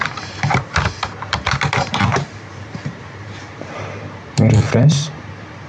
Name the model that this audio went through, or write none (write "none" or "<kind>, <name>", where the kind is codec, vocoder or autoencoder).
vocoder, BigVGAN v2